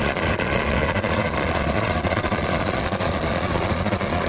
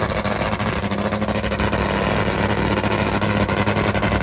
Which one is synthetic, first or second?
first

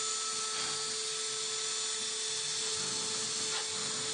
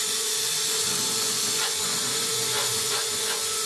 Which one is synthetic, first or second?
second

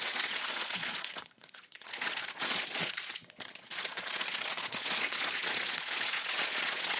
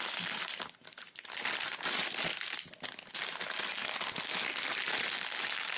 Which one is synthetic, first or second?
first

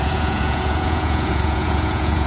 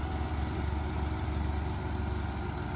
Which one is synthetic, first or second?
first